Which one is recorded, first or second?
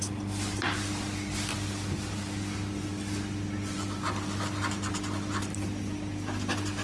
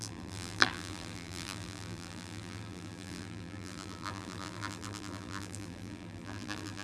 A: first